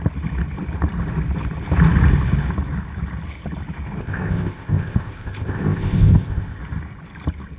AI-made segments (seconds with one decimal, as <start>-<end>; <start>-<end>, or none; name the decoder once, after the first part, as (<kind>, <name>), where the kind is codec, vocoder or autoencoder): 4.0-6.6 (codec, ZipCodec)